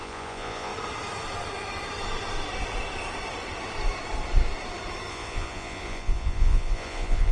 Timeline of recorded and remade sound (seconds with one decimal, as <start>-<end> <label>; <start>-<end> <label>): 0.0-0.7 remade; 0.7-5.1 recorded; 5.1-7.3 remade